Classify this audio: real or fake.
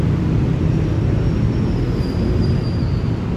real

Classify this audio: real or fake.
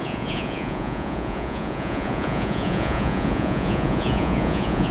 fake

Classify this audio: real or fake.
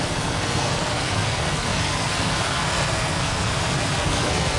fake